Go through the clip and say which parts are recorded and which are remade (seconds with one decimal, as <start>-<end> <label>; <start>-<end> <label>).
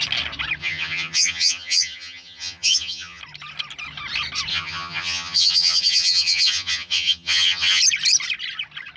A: 0.0-0.6 recorded; 0.6-3.2 remade; 3.2-4.5 recorded; 4.5-7.8 remade; 7.8-9.0 recorded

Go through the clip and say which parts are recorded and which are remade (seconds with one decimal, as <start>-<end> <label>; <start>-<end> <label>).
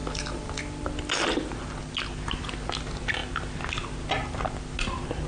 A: 0.0-0.6 remade; 0.6-5.3 recorded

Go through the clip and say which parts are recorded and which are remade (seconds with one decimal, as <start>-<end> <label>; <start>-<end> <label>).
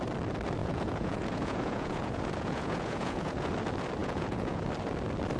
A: 0.0-0.6 recorded; 0.6-3.5 remade; 3.5-4.0 recorded; 4.0-4.6 remade; 4.6-5.4 recorded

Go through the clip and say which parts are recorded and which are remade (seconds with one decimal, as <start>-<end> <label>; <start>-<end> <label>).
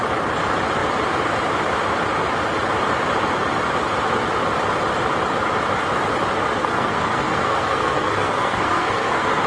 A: 0.0-6.6 recorded; 6.6-9.5 remade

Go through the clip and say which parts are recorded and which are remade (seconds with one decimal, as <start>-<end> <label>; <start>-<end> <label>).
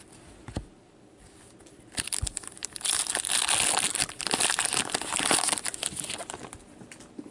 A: 0.0-7.3 recorded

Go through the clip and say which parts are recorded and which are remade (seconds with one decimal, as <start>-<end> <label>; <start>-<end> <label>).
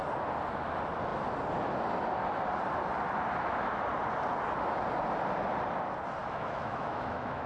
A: 0.0-6.2 recorded; 6.2-7.5 remade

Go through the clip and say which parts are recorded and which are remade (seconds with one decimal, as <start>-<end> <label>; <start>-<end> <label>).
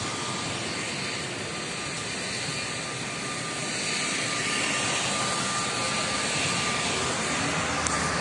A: 0.0-8.2 recorded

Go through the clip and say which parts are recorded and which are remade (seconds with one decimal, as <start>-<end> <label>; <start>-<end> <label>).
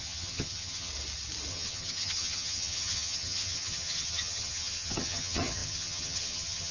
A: 0.0-0.9 remade; 0.9-1.5 recorded; 1.5-6.7 remade